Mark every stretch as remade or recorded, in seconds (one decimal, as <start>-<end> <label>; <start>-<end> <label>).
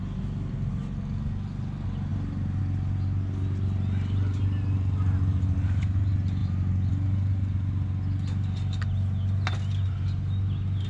0.0-10.9 recorded